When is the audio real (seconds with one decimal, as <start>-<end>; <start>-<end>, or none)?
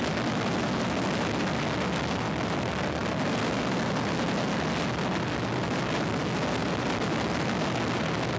0.0-8.4